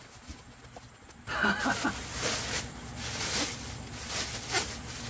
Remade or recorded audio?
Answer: recorded